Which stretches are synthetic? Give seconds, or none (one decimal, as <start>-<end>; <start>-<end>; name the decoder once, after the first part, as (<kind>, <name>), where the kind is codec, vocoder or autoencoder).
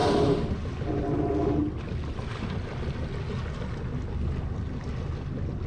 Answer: none